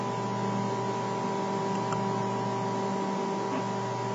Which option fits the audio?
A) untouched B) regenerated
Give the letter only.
A